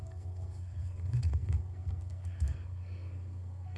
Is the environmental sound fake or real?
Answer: fake